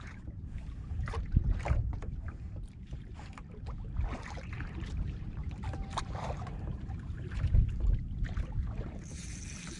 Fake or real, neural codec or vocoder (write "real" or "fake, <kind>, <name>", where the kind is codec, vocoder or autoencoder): fake, vocoder, BigVGAN v2